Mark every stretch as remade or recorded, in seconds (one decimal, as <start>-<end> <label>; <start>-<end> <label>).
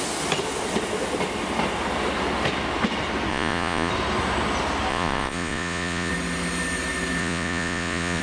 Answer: 0.0-3.3 recorded; 3.3-3.9 remade; 3.9-4.9 recorded; 4.9-6.1 remade; 6.1-7.2 recorded; 7.2-8.2 remade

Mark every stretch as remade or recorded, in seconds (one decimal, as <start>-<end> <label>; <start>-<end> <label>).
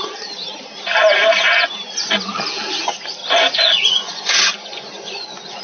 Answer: 0.0-3.2 recorded; 3.2-5.6 remade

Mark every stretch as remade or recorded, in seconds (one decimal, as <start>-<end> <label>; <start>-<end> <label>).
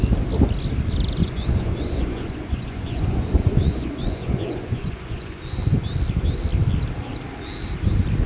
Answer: 0.0-1.2 recorded; 1.2-5.4 remade; 5.4-8.3 recorded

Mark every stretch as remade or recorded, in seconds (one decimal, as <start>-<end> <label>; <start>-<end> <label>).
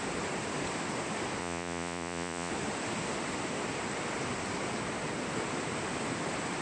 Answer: 0.0-1.4 recorded; 1.4-2.5 remade; 2.5-6.6 recorded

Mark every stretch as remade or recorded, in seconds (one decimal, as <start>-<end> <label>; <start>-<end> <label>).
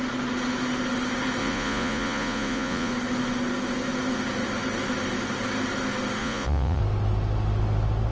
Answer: 0.0-1.4 recorded; 1.4-2.9 remade; 2.9-6.2 recorded; 6.2-6.8 remade; 6.8-8.1 recorded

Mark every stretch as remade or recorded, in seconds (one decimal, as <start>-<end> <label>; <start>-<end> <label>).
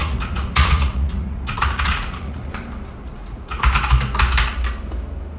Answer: 0.0-2.5 remade; 2.5-3.0 recorded; 3.0-3.6 remade; 3.6-5.4 recorded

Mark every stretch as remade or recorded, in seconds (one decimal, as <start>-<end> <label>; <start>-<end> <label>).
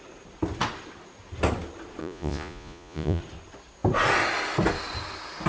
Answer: 0.0-2.0 recorded; 2.0-3.2 remade; 3.2-5.5 recorded